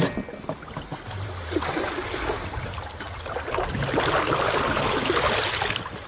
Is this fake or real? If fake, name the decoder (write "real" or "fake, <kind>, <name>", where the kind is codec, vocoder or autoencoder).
real